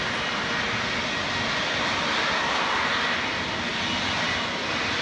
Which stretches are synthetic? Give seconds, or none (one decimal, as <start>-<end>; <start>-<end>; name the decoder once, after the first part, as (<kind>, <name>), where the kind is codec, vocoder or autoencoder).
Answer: none